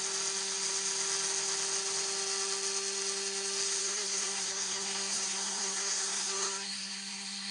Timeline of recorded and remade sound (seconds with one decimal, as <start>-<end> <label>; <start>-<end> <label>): 0.0-3.8 recorded; 3.8-7.5 remade